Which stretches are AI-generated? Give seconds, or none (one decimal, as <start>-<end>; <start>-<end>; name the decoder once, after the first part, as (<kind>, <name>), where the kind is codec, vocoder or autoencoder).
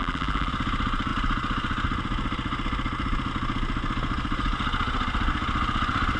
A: 0.0-0.5 (vocoder, BigVGAN v2)